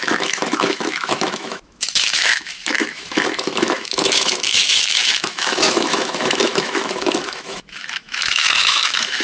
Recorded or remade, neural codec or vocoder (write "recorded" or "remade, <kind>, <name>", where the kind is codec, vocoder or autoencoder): remade, autoencoder, DAC-VAE